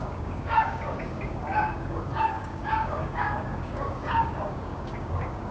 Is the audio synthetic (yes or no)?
yes